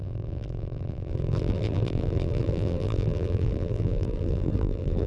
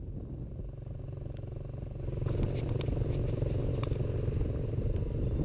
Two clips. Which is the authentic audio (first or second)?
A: second